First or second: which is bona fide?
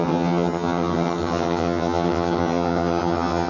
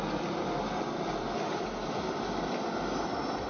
second